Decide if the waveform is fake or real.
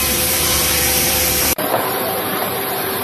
fake